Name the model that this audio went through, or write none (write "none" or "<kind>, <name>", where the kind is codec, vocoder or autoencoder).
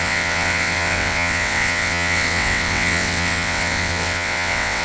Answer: vocoder, WaveNeXt